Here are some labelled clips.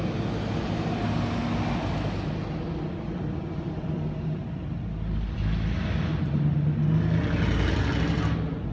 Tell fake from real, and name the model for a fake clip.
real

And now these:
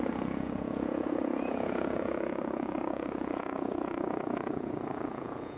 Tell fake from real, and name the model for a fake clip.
fake, vocoder, Vocos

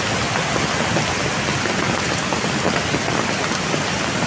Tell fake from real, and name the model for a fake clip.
real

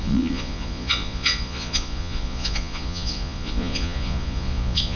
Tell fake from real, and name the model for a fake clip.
fake, vocoder, Vocos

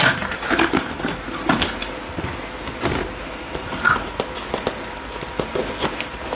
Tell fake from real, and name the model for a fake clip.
real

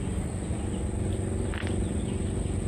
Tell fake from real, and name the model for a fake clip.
real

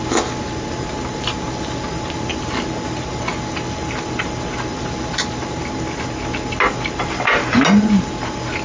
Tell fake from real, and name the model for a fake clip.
real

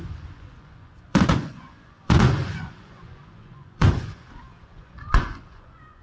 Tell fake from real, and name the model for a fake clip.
fake, vocoder, Vocos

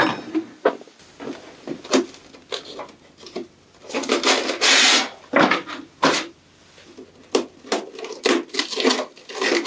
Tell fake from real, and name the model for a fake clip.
real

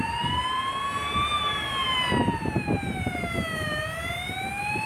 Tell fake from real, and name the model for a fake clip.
real